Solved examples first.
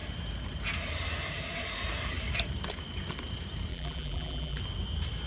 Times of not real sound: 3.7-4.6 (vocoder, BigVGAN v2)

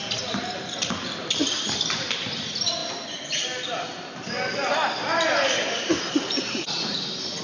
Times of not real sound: none

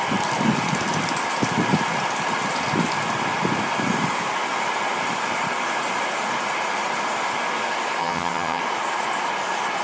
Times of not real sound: 8.0-8.6 (vocoder, HiFi-GAN)

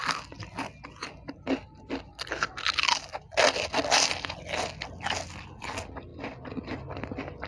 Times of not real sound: none

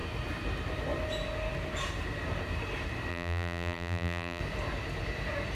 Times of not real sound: 3.1-4.4 (vocoder, BigVGAN v2)